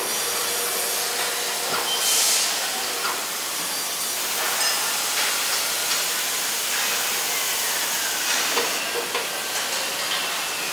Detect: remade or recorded recorded